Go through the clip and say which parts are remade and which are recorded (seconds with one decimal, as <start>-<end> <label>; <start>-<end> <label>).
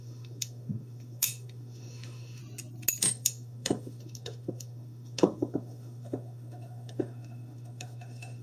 0.0-2.4 remade; 2.4-3.0 recorded; 3.0-8.4 remade